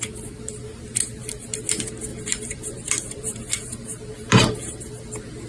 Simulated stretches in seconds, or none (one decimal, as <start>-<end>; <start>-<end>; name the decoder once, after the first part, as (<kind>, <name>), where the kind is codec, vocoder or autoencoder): 0.7-1.6 (vocoder, BigVGAN v2); 2.1-5.0